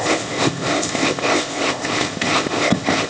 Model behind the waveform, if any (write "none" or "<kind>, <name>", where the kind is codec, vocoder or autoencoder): codec, ZipCodec